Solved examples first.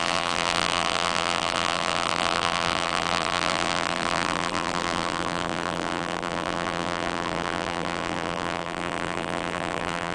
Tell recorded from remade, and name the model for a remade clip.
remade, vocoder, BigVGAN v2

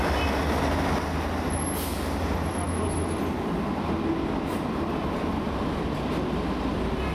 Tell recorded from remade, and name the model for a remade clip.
recorded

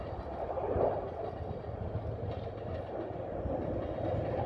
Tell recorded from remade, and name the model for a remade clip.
recorded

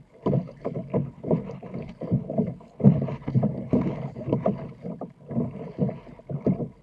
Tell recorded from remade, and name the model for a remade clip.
recorded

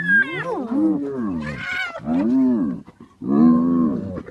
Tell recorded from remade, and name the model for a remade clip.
recorded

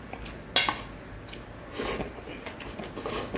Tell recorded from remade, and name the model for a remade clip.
recorded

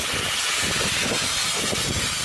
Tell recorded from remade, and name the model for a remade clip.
recorded